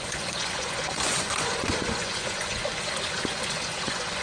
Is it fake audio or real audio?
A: fake